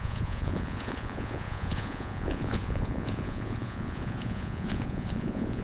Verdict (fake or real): fake